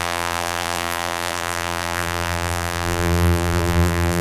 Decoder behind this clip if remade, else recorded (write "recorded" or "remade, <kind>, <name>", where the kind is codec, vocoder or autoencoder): remade, vocoder, BigVGAN v2